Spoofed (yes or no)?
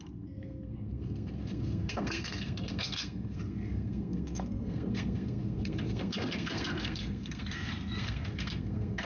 yes